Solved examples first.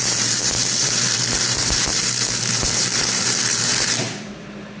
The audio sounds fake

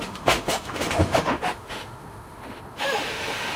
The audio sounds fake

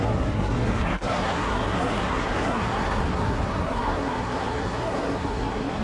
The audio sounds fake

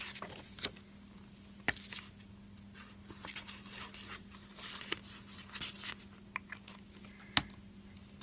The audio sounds real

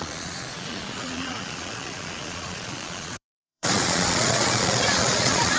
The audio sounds fake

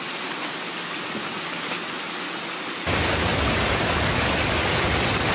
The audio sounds real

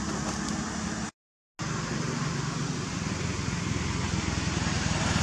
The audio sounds real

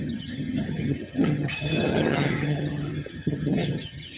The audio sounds fake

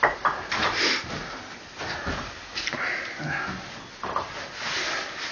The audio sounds real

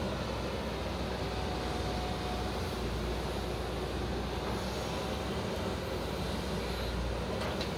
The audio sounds real